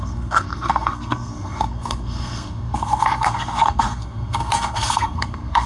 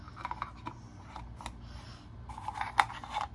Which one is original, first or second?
second